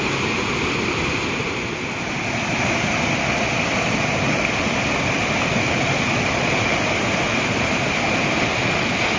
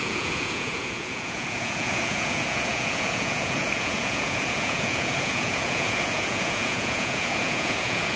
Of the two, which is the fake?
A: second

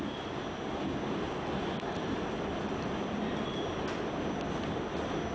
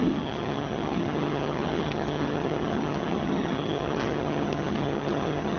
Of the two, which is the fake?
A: second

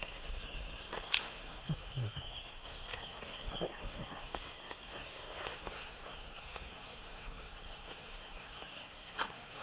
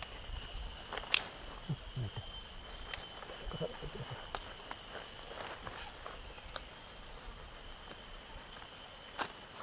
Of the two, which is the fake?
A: first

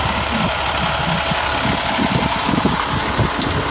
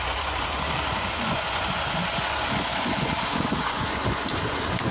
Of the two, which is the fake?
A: second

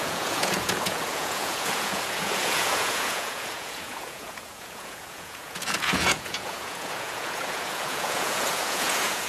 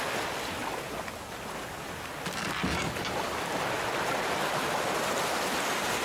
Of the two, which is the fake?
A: first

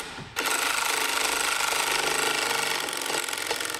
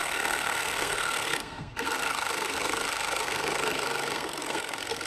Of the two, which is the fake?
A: second